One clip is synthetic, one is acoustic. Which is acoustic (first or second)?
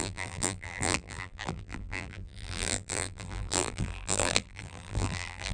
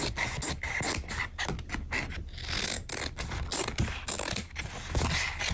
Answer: second